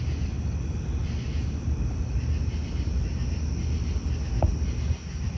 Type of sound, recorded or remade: recorded